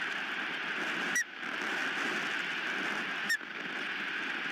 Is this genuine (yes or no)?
yes